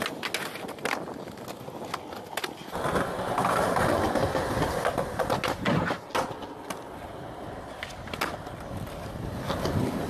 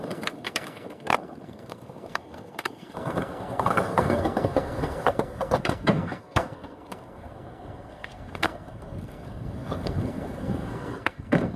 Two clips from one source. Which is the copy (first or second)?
second